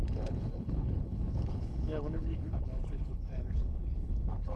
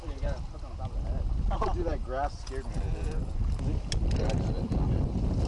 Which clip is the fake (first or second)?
first